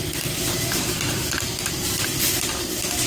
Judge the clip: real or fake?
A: fake